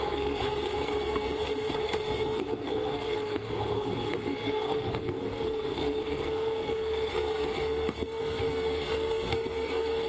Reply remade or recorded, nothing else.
remade